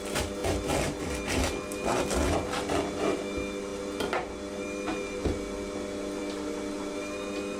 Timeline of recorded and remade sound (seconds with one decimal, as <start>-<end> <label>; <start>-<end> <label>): 0.0-7.6 recorded